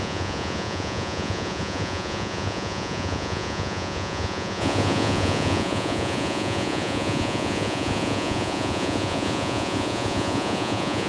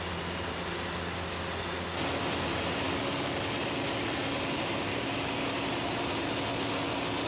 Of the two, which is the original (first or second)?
second